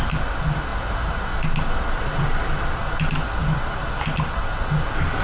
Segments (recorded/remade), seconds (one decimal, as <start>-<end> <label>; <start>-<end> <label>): 0.0-5.2 recorded